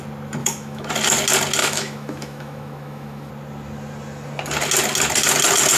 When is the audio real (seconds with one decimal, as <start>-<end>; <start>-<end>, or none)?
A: 0.0-0.4; 0.9-1.6; 3.3-5.8